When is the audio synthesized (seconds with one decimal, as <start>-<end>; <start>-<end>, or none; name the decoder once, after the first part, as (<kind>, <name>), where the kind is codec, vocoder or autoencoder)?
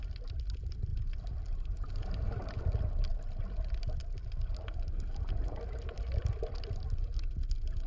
0.9-1.9 (vocoder, BigVGAN v2)